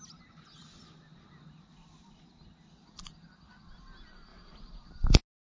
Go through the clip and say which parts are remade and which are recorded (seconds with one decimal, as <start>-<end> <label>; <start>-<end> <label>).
0.0-5.6 recorded